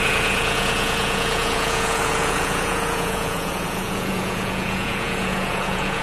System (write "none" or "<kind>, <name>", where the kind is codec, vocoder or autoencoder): vocoder, Vocos